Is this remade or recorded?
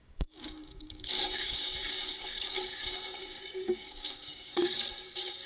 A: remade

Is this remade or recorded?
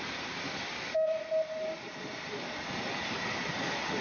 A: recorded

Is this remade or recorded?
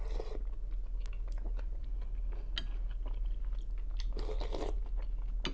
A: recorded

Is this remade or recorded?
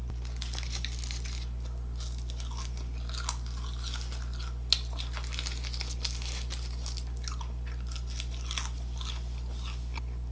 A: recorded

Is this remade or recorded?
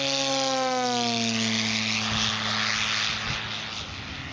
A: recorded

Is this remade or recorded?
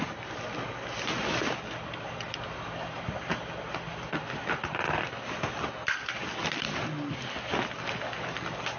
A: recorded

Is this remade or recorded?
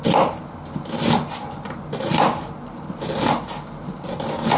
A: recorded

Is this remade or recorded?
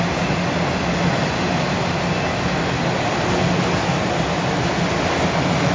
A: recorded